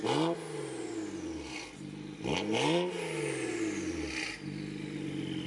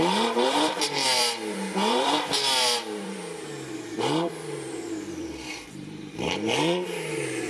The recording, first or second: first